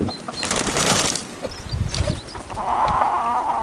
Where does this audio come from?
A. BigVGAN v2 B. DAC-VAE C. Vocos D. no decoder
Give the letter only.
D